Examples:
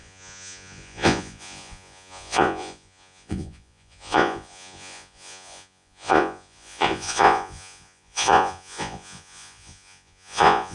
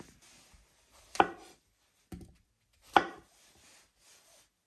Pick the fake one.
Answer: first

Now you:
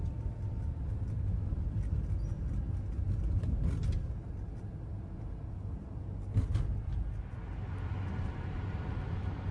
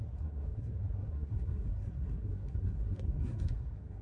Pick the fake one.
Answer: second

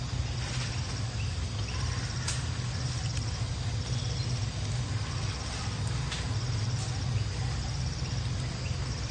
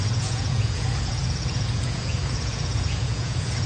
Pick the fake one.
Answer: second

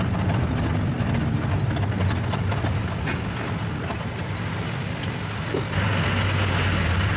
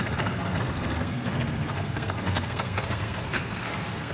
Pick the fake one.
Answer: second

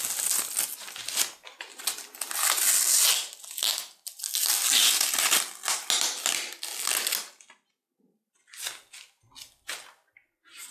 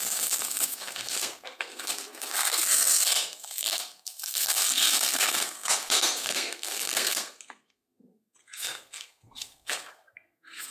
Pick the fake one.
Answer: second